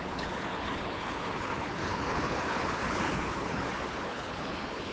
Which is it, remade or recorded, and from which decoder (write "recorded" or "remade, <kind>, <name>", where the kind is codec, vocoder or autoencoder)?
remade, codec, HILCodec